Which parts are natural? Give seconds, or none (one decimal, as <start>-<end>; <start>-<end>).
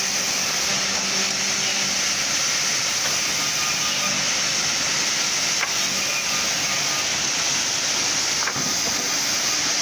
0.7-9.8